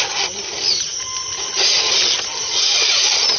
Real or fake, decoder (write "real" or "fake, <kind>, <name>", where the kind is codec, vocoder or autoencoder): real